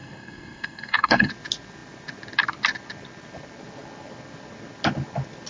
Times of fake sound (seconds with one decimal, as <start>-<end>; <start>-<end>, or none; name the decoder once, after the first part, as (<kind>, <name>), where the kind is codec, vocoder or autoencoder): 0.0-1.3 (codec, SNAC)